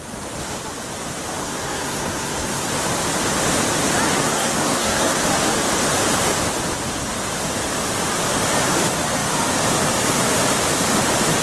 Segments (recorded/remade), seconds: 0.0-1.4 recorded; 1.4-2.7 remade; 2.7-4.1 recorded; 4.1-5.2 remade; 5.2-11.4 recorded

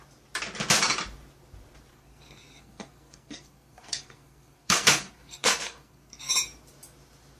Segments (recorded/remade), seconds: 0.0-1.9 recorded; 1.9-6.3 remade; 6.3-7.4 recorded

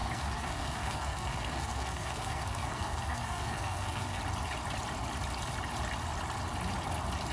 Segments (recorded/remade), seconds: 0.0-4.2 remade; 4.2-7.3 recorded

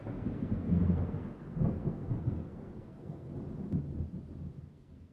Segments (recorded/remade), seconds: 0.0-3.3 remade; 3.3-4.6 recorded; 4.6-5.1 remade

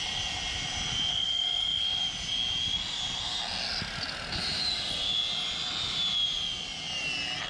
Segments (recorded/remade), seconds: 0.0-1.1 recorded; 1.1-1.8 remade; 1.8-7.5 recorded

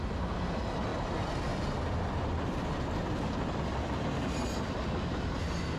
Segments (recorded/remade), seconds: 0.0-5.8 recorded

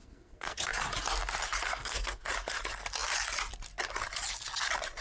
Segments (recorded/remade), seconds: 0.0-0.7 remade; 0.7-1.7 recorded; 1.7-2.3 remade; 2.3-5.0 recorded